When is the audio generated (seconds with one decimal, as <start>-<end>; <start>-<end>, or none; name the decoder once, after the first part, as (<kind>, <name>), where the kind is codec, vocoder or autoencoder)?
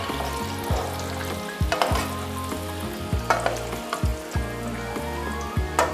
none